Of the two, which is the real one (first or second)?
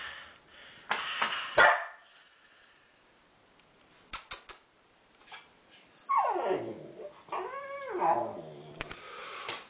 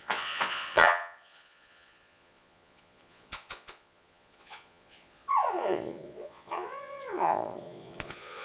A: first